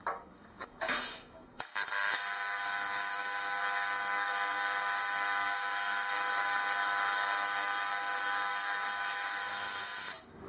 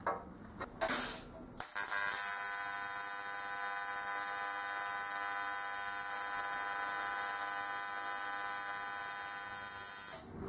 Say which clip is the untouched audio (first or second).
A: second